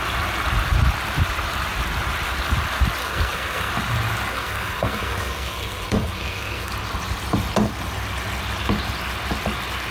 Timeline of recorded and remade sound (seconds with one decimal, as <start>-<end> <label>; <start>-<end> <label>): 0.0-3.0 recorded; 3.0-3.7 remade; 3.7-4.3 recorded; 4.3-6.7 remade; 6.7-9.9 recorded